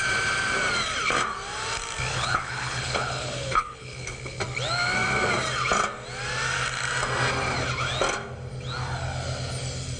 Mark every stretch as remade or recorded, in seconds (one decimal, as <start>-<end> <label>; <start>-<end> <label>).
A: 0.0-2.1 recorded; 2.1-4.4 remade; 4.4-10.0 recorded

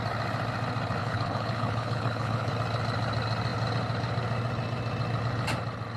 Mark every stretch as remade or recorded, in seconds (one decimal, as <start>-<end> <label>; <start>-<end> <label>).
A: 0.0-1.0 recorded; 1.0-2.5 remade; 2.5-6.0 recorded